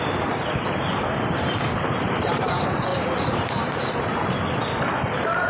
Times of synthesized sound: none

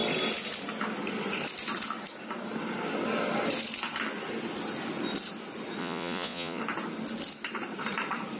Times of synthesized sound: 5.8-6.6

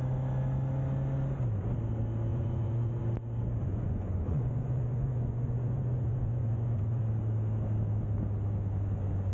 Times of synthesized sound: 2.3-3.0; 3.6-7.0

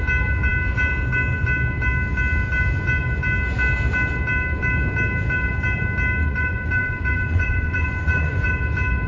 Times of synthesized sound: 6.2-8.5

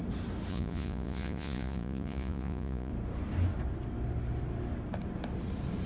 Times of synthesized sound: 0.5-2.9